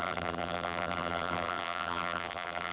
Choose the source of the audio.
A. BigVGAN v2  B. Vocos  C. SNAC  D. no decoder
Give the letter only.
A